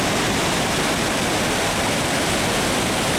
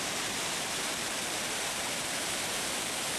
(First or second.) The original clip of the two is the first